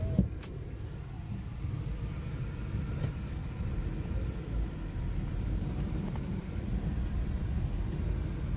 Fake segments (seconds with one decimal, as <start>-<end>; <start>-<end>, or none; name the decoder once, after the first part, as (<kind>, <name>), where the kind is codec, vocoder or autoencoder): 5.3-6.9 (vocoder, BigVGAN v2)